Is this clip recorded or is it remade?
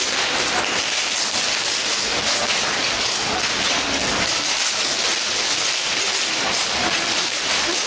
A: recorded